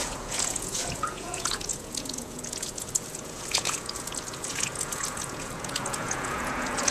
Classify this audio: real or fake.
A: fake